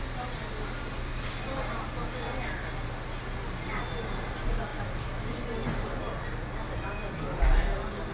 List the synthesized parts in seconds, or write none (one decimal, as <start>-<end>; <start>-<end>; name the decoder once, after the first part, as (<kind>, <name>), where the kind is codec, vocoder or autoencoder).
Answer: none